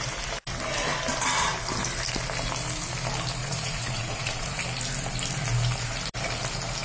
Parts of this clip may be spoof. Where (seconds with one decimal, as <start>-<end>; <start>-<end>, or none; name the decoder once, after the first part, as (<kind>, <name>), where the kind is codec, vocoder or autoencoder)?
3.4-4.6 (vocoder, Vocos)